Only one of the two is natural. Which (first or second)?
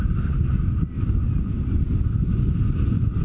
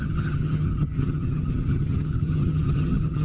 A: first